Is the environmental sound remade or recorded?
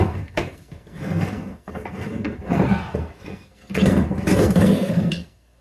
remade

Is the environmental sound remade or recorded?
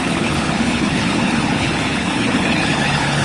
remade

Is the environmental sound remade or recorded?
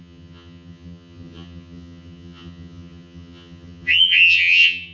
remade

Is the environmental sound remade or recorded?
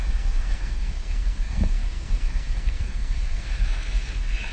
remade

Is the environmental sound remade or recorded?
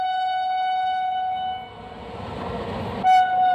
recorded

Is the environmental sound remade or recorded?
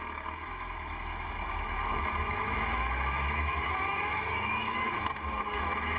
remade